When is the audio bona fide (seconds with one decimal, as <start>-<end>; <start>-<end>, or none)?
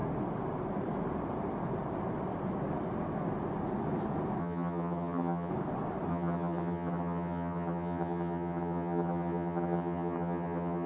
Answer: 0.0-4.4; 5.5-6.1